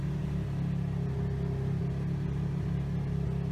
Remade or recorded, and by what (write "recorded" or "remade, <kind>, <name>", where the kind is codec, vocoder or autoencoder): recorded